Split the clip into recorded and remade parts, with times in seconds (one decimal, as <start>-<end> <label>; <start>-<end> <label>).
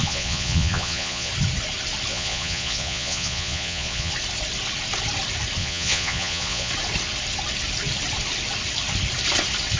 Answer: 0.0-1.3 remade; 1.3-2.1 recorded; 2.1-4.1 remade; 4.1-5.6 recorded; 5.6-6.7 remade; 6.7-9.8 recorded